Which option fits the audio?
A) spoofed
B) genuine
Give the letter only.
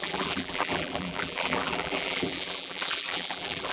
A